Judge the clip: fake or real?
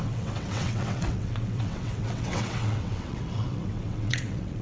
fake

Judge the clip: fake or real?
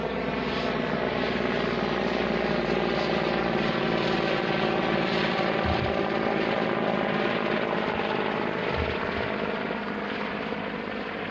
real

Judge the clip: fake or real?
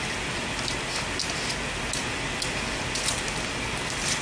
real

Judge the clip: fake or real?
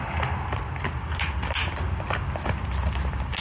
real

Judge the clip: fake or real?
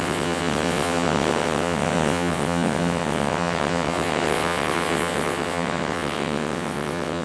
fake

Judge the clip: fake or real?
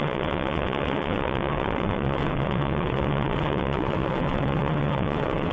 fake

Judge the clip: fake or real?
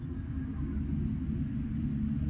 real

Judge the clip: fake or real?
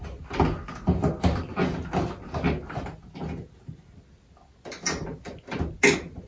real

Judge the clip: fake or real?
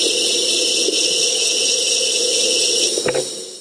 real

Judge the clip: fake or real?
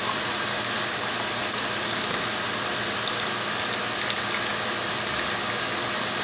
real